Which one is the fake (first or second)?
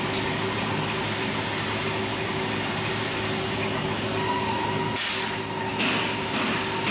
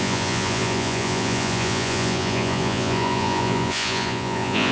second